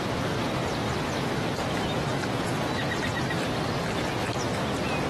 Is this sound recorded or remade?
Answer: recorded